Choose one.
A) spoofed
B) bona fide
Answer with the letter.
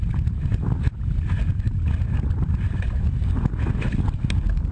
B